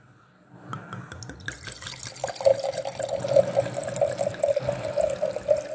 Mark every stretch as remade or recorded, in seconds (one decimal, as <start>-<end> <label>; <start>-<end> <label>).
0.0-5.7 recorded

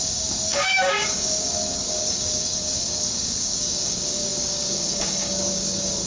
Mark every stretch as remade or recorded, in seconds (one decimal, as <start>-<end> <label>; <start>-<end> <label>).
0.0-6.1 remade

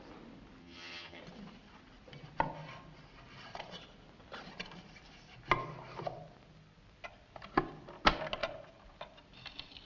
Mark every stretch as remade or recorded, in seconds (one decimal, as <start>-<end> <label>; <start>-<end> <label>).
0.0-0.6 recorded; 0.6-1.2 remade; 1.2-9.9 recorded

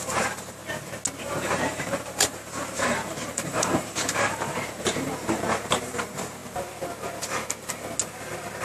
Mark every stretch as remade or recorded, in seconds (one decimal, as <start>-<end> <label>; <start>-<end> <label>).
0.0-0.6 remade; 0.6-1.2 recorded; 1.2-6.4 remade; 6.4-8.6 recorded

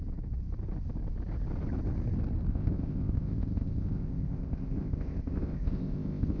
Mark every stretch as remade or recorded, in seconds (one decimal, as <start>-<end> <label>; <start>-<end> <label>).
0.0-2.5 recorded; 2.5-6.4 remade

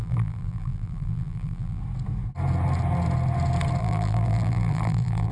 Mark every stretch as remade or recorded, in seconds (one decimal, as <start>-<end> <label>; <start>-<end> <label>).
0.0-1.8 remade; 1.8-3.8 recorded; 3.8-5.3 remade

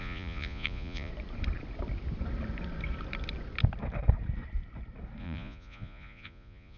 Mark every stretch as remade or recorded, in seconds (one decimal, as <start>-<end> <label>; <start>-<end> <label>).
0.0-1.1 remade; 1.1-5.2 recorded; 5.2-6.8 remade

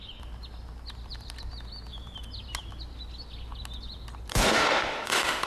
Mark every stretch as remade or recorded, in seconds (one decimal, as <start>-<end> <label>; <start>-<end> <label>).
0.0-4.3 recorded; 4.3-5.5 remade